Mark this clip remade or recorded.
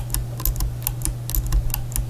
recorded